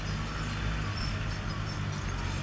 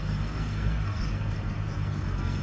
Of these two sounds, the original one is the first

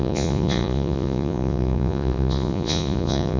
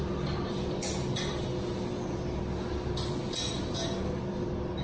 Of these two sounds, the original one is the second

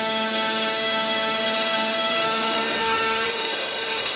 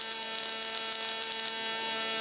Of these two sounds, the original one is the second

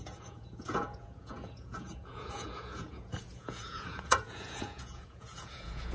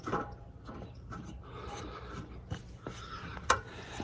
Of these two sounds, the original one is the second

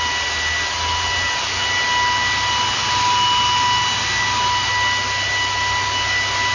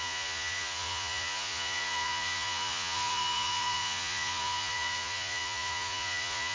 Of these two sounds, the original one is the first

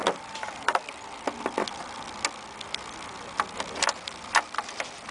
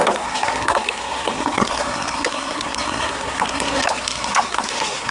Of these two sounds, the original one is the first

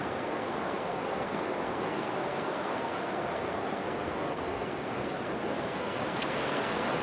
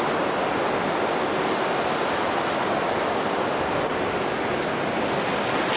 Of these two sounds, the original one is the second